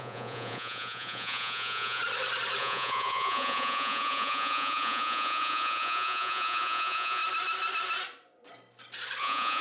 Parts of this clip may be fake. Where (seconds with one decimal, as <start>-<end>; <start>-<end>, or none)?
0.0-2.0; 2.6-7.2; 9.2-9.6